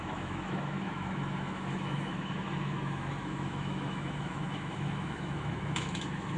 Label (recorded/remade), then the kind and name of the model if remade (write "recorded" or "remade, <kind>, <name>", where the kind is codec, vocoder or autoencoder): remade, autoencoder, DAC-VAE